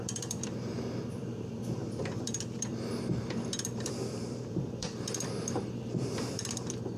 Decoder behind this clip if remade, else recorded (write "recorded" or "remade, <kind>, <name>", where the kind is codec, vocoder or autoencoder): remade, vocoder, BigVGAN v2